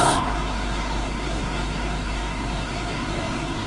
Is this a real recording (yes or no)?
no